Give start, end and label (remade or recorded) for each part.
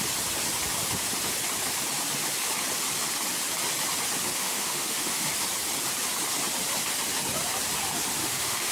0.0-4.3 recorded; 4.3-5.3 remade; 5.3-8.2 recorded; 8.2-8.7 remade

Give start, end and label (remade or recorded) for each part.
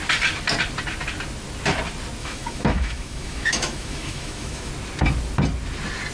0.0-2.2 recorded; 2.2-4.7 remade; 4.7-6.1 recorded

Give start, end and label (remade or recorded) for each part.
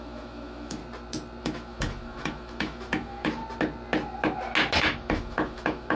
0.0-0.8 remade; 0.8-1.4 recorded; 1.4-3.4 remade; 3.4-4.8 recorded; 4.8-6.0 remade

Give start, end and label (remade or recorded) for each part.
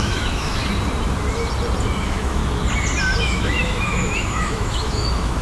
0.0-0.6 remade; 0.6-2.0 recorded; 2.0-2.4 remade; 2.4-3.2 recorded; 3.2-5.4 remade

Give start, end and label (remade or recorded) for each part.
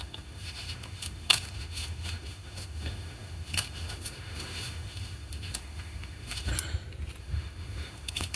0.0-6.5 remade; 6.5-7.2 recorded; 7.2-8.4 remade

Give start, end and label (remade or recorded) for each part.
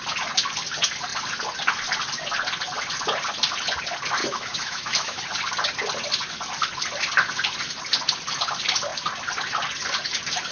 0.0-4.2 recorded; 4.2-5.2 remade; 5.2-10.5 recorded